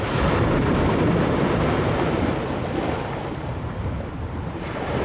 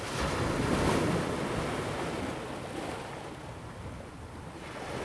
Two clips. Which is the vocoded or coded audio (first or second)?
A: first